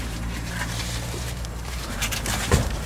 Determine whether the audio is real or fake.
fake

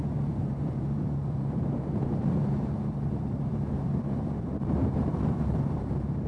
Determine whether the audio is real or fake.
fake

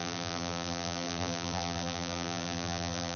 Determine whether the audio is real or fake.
fake